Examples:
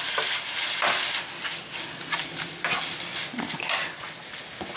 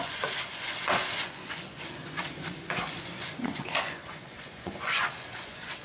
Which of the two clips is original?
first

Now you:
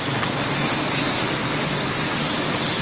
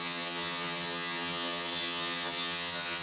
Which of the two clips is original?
first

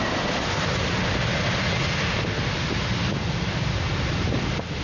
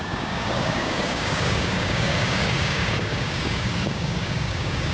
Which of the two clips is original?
first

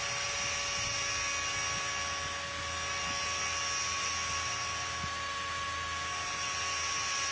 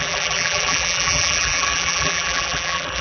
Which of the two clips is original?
first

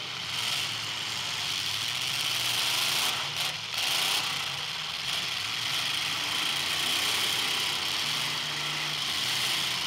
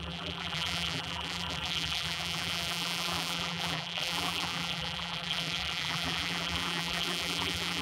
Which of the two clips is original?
first